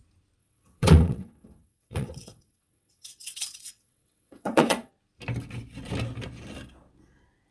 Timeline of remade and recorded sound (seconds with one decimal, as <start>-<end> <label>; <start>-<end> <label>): 0.0-0.4 recorded; 0.4-4.9 remade; 4.9-7.5 recorded

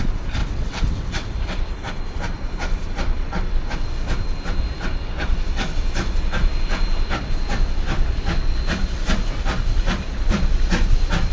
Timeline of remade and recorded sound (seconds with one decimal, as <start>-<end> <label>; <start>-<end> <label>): 0.0-0.4 recorded; 0.4-1.3 remade; 1.3-11.3 recorded

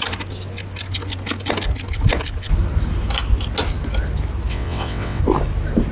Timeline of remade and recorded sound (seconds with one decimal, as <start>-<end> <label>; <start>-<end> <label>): 0.0-4.5 recorded; 4.5-5.2 remade; 5.2-5.9 recorded

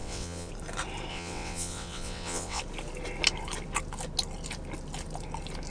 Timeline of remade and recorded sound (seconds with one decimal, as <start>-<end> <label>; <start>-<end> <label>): 0.0-0.5 remade; 0.5-1.1 recorded; 1.1-2.6 remade; 2.6-5.7 recorded

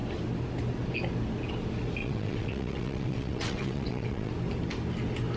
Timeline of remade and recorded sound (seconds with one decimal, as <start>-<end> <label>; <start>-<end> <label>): 0.0-2.0 recorded; 2.0-4.3 remade; 4.3-5.4 recorded